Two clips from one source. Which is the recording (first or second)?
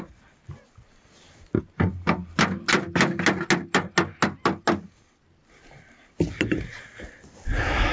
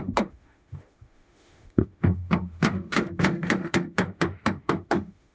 first